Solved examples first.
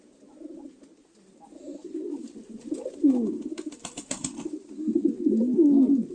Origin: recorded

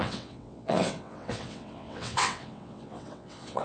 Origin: remade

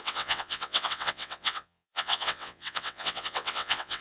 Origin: remade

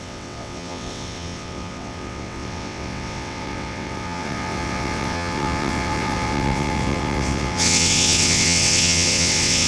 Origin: remade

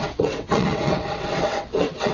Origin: remade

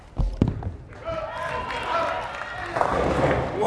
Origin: recorded